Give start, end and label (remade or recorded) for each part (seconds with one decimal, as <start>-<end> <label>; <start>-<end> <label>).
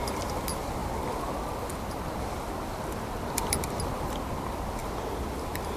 0.0-5.8 recorded